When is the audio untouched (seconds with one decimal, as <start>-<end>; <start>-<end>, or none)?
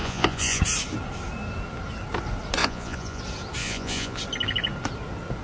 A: 0.6-2.6; 3.2-3.6; 4.2-5.4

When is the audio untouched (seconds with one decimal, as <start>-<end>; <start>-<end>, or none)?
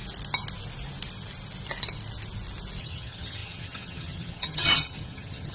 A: 0.0-2.8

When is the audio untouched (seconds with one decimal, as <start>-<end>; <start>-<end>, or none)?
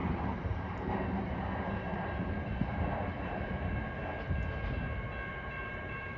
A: 3.7-5.3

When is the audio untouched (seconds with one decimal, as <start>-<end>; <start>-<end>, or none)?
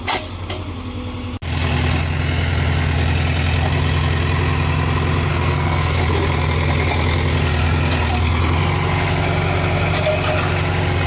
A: 0.0-5.3; 6.0-11.1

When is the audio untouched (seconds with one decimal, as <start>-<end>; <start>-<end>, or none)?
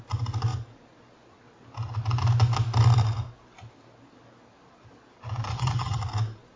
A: 0.0-5.5; 6.0-6.6